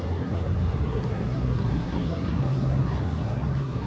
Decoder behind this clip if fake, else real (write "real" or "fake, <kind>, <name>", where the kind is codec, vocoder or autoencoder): fake, codec, SNAC